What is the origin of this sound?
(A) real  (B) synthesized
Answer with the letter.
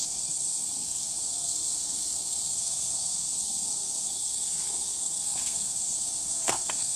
B